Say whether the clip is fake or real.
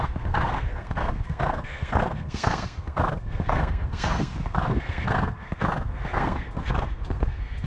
fake